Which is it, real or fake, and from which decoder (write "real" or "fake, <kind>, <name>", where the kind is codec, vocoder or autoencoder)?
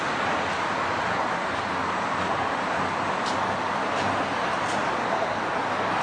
real